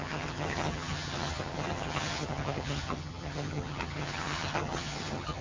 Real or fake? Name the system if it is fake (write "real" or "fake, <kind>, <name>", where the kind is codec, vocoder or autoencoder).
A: fake, vocoder, HiFi-GAN